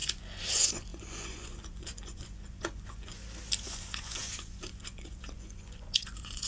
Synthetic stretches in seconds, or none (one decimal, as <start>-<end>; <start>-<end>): 0.0-3.2; 3.7-6.5